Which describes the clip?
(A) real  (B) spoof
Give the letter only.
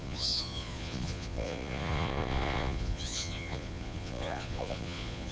B